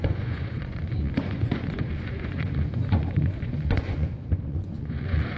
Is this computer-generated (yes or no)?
yes